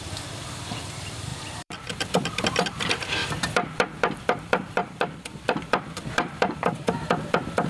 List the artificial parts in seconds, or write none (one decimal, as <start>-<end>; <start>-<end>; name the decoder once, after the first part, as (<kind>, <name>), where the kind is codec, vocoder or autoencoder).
0.0-7.7 (vocoder, BigVGAN v2)